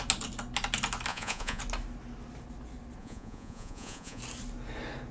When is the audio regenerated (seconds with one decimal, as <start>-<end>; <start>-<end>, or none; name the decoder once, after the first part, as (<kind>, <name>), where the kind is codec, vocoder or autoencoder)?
1.1-1.6 (vocoder, Vocos); 3.0-4.2